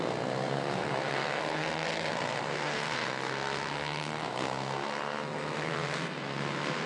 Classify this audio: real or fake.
fake